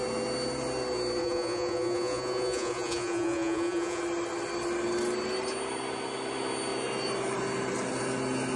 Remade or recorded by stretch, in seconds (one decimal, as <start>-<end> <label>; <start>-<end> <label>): 0.0-1.2 recorded; 1.2-4.0 remade; 4.0-8.6 recorded